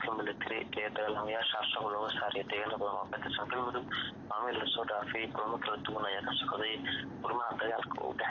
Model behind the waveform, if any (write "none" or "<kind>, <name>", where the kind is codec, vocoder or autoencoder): none